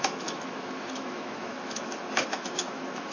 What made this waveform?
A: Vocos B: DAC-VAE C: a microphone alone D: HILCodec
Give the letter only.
B